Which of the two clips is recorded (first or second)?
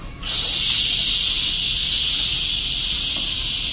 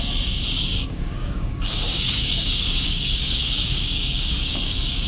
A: first